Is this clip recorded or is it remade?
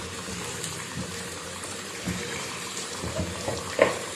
remade